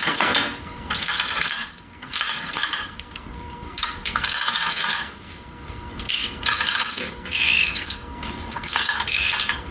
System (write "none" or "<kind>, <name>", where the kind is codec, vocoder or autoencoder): codec, SNAC